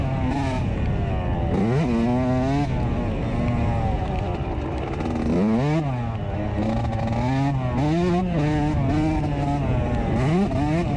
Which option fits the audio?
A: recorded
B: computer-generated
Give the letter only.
A